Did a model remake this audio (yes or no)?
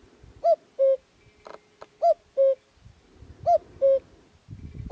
no